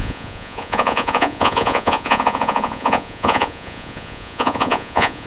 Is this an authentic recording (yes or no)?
no